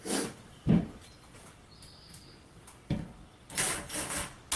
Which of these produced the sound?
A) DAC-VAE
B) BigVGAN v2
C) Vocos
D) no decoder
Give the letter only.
D